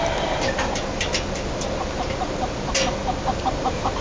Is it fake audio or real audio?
real